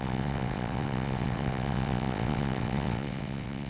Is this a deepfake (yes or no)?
yes